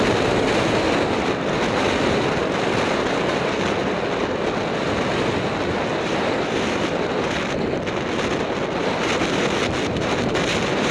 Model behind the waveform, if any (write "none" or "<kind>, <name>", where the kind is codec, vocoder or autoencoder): none